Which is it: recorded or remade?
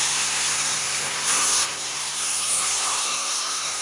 remade